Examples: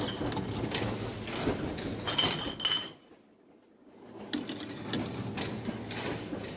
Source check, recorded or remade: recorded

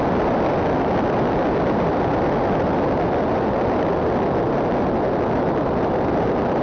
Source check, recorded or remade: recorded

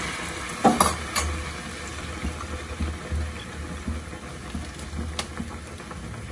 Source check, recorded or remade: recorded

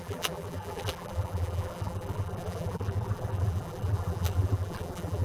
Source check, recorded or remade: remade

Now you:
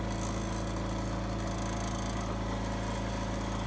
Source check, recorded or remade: recorded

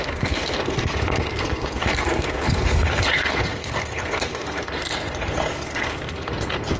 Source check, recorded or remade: remade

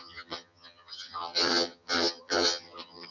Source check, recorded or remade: remade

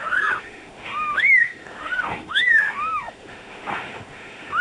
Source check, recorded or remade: remade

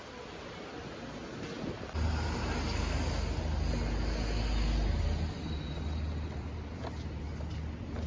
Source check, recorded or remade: recorded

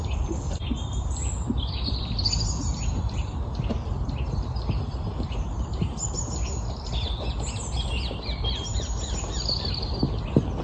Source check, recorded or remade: recorded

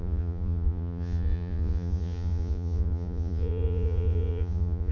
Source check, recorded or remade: remade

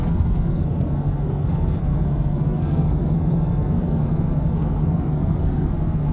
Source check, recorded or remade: remade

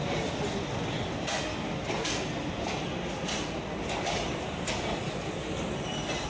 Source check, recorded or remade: recorded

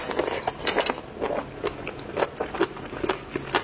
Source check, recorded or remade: recorded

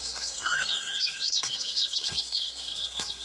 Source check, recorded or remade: remade